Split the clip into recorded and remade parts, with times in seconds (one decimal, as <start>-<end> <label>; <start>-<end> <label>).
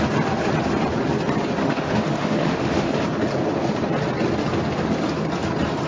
0.0-1.6 recorded; 1.6-2.9 remade; 2.9-5.9 recorded